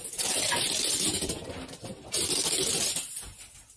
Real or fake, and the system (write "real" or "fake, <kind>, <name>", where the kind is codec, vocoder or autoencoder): real